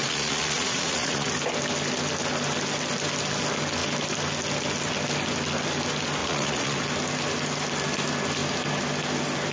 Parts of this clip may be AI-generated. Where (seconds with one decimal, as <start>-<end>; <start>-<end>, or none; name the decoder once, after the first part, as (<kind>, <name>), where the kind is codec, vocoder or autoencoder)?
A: 0.0-1.3 (vocoder, Vocos); 6.2-6.8